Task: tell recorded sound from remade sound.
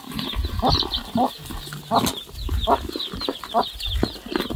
recorded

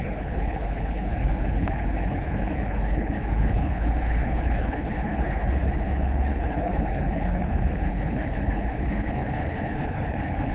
remade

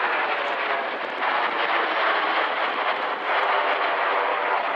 recorded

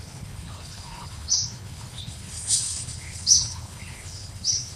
remade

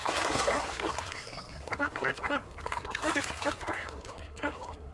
remade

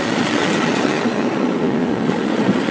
remade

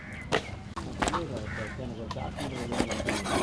recorded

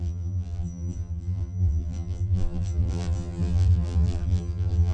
remade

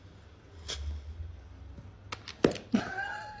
recorded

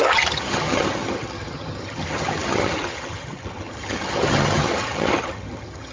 remade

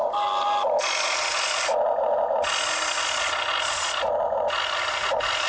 recorded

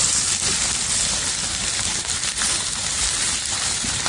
remade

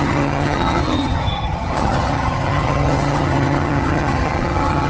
remade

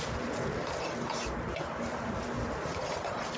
recorded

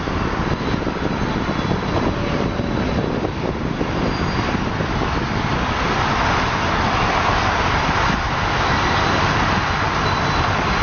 recorded